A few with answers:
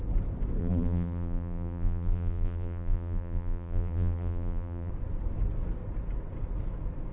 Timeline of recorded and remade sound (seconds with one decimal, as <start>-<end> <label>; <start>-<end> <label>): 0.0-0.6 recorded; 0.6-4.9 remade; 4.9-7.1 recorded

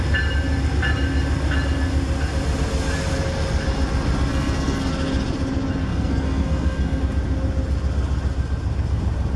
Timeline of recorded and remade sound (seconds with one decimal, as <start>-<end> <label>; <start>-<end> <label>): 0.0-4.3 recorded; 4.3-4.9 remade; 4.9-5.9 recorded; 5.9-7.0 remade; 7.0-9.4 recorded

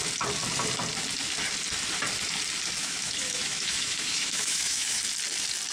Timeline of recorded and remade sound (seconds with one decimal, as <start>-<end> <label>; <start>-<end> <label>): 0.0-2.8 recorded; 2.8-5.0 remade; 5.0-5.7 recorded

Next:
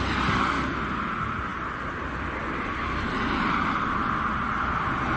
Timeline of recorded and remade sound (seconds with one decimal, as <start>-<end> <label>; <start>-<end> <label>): 0.0-5.2 recorded